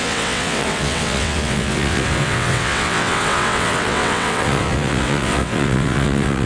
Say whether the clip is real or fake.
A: fake